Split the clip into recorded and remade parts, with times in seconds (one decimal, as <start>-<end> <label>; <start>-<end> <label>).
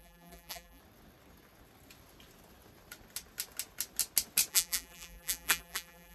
0.0-0.8 remade; 0.8-4.5 recorded; 4.5-6.1 remade